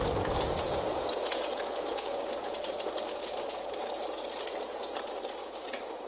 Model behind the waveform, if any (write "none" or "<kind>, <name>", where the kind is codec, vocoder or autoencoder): vocoder, Vocos